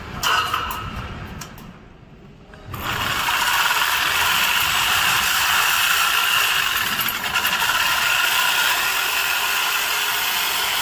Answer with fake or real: real